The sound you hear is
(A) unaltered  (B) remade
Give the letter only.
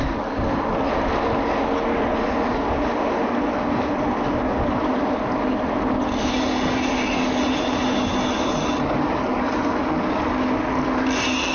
A